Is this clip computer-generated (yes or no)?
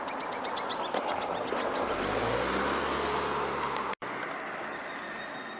no